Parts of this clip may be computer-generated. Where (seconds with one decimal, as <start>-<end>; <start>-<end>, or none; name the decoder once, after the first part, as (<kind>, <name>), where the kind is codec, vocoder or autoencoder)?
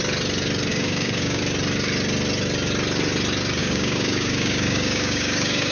0.7-1.4 (codec, DAC); 3.6-5.7